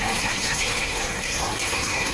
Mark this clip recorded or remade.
remade